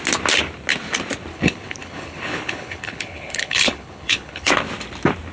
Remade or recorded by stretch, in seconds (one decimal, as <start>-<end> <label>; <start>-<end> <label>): 0.0-1.3 recorded; 1.3-4.5 remade; 4.5-5.3 recorded